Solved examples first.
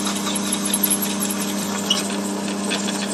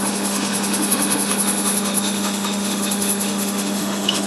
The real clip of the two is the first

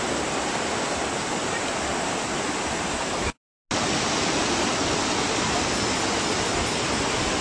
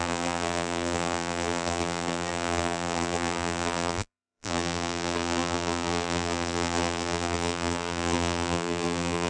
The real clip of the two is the first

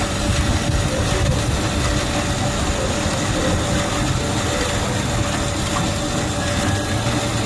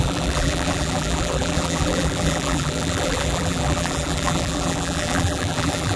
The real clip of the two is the first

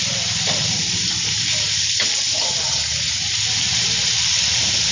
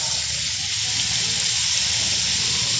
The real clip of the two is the second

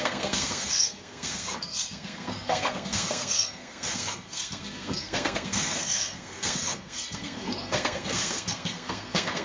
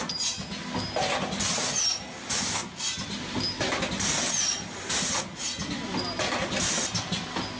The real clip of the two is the second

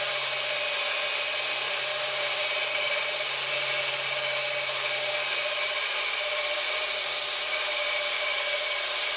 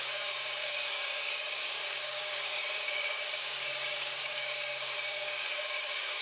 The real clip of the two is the first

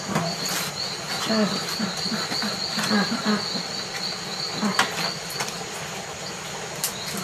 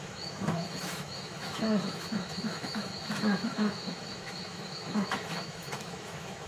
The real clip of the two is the first